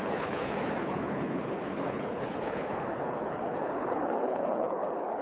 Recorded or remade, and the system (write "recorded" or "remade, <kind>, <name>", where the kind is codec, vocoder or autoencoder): remade, codec, HILCodec